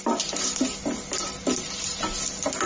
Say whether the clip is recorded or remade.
recorded